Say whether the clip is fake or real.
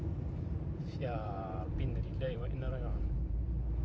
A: fake